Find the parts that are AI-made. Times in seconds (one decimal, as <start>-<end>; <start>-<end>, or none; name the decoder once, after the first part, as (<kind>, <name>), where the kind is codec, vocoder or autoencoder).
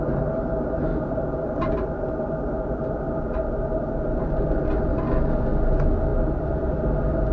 0.9-5.0 (vocoder, BigVGAN v2); 6.1-6.8